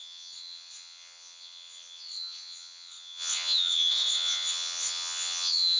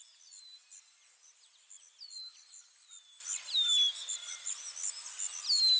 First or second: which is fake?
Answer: first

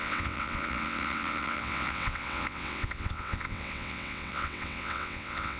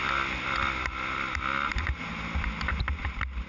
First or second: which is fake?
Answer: first